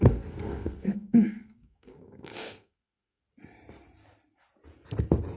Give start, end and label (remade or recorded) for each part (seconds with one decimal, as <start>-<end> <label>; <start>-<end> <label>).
0.0-3.2 remade; 3.2-5.4 recorded